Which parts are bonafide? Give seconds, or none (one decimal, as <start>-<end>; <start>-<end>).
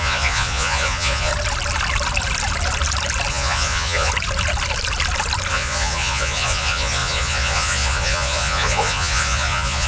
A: 1.3-3.3; 4.1-5.5